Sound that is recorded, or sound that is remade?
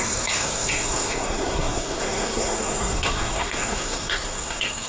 remade